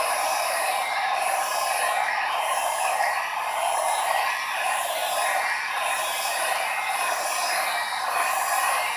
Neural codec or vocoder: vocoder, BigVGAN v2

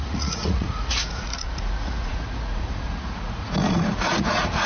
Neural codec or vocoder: vocoder, Vocos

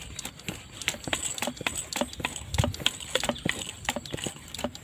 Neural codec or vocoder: none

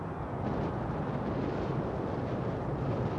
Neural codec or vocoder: none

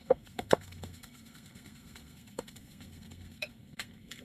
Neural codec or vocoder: codec, SNAC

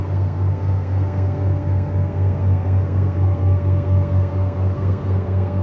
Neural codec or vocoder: codec, SNAC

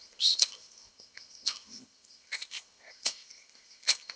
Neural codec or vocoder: codec, ZipCodec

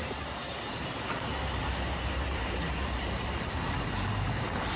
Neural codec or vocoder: vocoder, BigVGAN v2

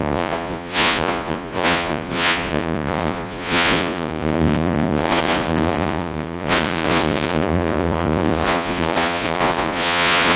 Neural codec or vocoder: vocoder, Vocos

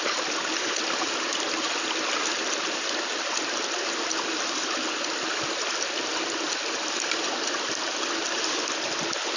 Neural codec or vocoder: none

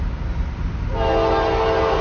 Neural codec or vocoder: none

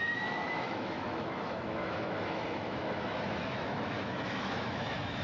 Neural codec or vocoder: autoencoder, DAC-VAE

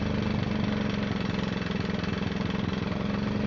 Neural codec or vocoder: none